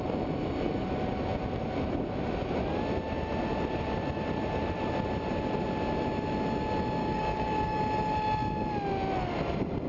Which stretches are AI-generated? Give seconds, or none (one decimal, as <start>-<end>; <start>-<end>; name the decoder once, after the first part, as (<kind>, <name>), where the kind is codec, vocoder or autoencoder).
7.0-7.8 (codec, DAC)